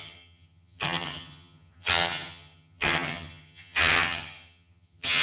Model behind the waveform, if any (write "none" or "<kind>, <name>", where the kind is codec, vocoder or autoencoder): vocoder, HiFi-GAN